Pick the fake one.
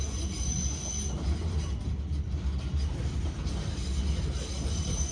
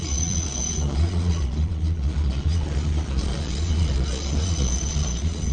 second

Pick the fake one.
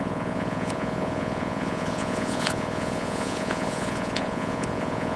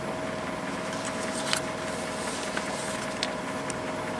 first